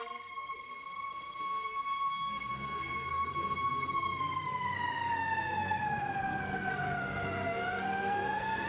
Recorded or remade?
remade